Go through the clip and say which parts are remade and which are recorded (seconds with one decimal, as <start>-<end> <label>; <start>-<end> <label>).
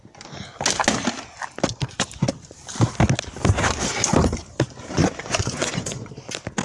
0.0-5.0 recorded; 5.0-6.1 remade; 6.1-6.6 recorded